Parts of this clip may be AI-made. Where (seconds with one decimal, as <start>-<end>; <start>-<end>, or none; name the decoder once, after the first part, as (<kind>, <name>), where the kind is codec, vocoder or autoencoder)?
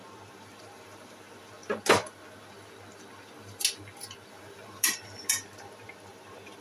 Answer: 0.0-1.6 (vocoder, BigVGAN v2); 4.3-6.6